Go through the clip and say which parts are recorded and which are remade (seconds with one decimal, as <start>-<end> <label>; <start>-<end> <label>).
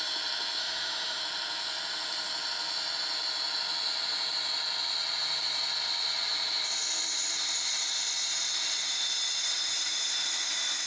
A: 0.0-0.6 recorded; 0.6-1.2 remade; 1.2-10.9 recorded